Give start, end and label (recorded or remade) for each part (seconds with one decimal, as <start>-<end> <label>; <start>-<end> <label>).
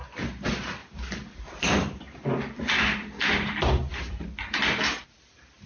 0.0-0.8 recorded; 0.8-4.2 remade; 4.2-5.7 recorded